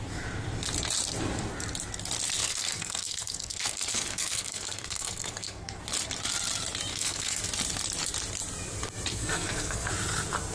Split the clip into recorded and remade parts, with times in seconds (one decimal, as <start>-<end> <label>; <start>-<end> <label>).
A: 0.0-2.4 recorded; 2.4-5.8 remade; 5.8-6.9 recorded; 6.9-7.4 remade; 7.4-9.1 recorded; 9.1-9.9 remade; 9.9-10.5 recorded